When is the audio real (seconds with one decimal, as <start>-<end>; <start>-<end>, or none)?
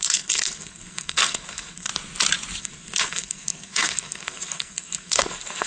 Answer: 1.9-2.6